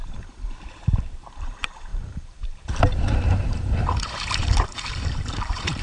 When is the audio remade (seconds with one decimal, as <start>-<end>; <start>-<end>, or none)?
0.0-5.8